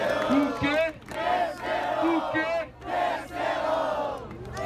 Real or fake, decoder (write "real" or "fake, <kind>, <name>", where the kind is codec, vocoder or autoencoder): real